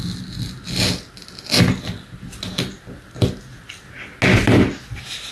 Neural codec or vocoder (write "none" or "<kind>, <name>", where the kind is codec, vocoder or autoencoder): none